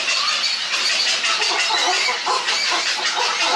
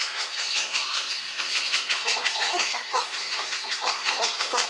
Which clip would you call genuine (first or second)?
first